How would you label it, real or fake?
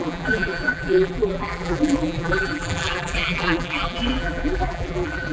fake